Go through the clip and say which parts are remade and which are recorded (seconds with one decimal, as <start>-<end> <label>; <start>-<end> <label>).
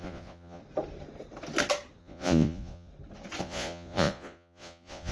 0.0-0.6 remade; 0.6-2.0 recorded; 2.0-2.9 remade; 2.9-3.4 recorded; 3.4-5.1 remade